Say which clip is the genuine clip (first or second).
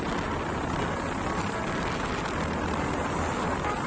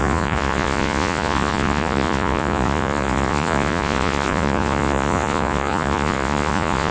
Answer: first